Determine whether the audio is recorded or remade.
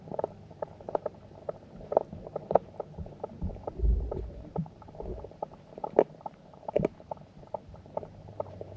remade